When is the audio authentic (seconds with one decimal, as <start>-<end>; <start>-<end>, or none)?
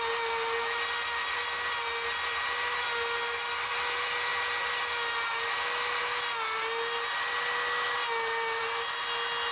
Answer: 0.0-9.5